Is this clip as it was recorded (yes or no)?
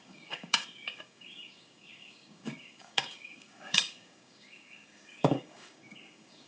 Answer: no